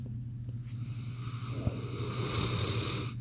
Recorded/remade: recorded